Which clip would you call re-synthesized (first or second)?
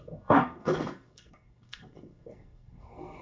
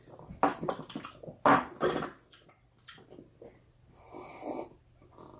first